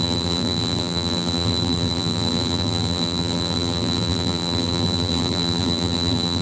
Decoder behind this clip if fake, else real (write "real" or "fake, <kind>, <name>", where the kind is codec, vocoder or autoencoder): fake, vocoder, BigVGAN v2